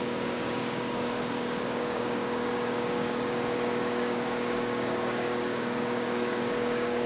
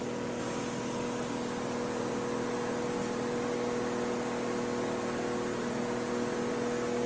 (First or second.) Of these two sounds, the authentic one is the second